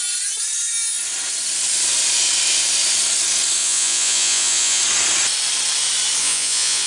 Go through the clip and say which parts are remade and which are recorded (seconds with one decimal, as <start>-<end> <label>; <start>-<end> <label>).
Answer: 0.0-3.6 recorded; 3.6-4.8 remade; 4.8-6.2 recorded; 6.2-6.9 remade